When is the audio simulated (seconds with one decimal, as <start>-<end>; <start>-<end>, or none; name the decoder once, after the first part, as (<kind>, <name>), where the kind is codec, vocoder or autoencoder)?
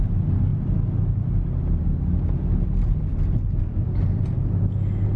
none